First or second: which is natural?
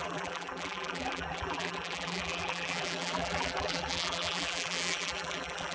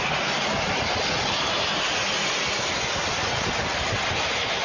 second